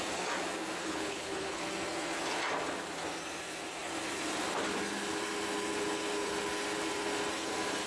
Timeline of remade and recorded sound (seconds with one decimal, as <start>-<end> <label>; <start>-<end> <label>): 0.0-0.8 recorded; 0.8-1.6 remade; 1.6-7.9 recorded